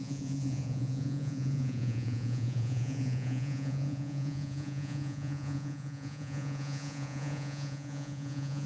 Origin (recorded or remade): remade